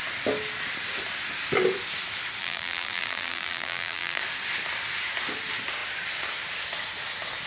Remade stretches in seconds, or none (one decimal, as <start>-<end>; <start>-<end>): 2.4-4.2